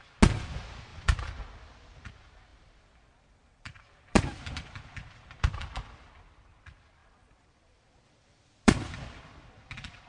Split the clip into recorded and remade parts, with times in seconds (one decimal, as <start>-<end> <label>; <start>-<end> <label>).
0.0-0.9 recorded; 0.9-1.4 remade; 1.4-2.5 recorded; 2.5-6.1 remade; 6.1-7.0 recorded; 7.0-9.2 remade; 9.2-10.1 recorded